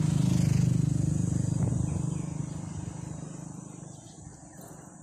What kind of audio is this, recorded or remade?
recorded